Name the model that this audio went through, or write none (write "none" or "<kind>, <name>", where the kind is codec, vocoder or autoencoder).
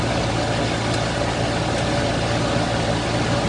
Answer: none